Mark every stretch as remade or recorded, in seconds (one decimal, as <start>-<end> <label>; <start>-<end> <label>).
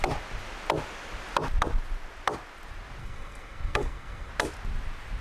0.0-3.0 recorded; 3.0-4.3 remade; 4.3-5.2 recorded